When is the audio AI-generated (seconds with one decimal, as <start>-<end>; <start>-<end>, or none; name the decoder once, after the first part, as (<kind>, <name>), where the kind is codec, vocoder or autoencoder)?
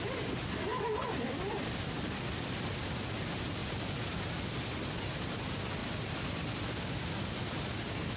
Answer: 0.7-1.8 (vocoder, BigVGAN v2)